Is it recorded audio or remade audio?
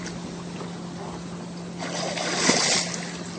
recorded